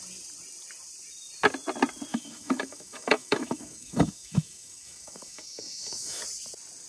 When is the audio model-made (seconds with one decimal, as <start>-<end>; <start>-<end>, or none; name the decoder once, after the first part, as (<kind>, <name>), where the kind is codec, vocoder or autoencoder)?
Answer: 2.1-6.2 (autoencoder, DAC-VAE)